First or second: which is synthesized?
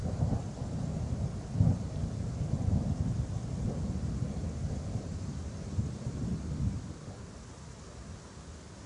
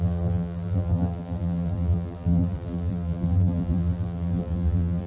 second